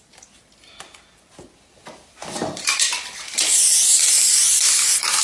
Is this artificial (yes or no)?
no